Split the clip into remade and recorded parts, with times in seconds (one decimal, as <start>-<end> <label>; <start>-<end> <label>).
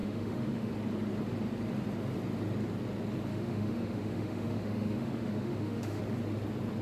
0.0-0.7 remade; 0.7-3.3 recorded; 3.3-6.0 remade; 6.0-6.8 recorded